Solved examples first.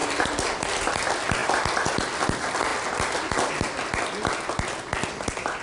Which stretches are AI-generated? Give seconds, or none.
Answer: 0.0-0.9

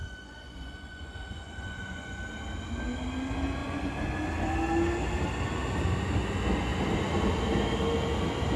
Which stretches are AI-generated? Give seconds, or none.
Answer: 0.0-2.2; 3.6-4.1

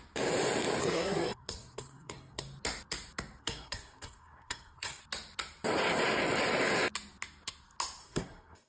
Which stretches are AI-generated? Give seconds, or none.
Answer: 0.8-2.4; 3.4-5.0; 8.0-8.7

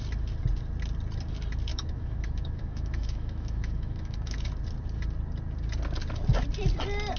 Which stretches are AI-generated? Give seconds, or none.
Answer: 1.7-4.5

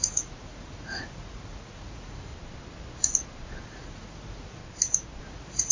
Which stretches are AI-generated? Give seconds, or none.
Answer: 0.0-2.3; 3.6-4.6; 5.2-5.7